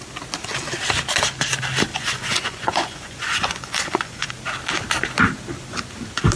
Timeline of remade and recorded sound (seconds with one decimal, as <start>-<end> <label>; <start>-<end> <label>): 0.0-1.9 recorded; 1.9-4.3 remade; 4.3-6.4 recorded